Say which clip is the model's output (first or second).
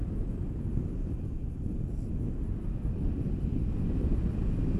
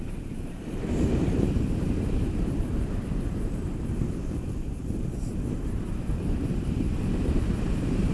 second